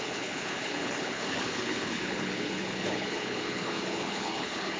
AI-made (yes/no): yes